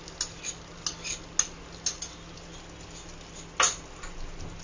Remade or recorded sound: recorded